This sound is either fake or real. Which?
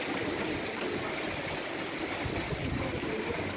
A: real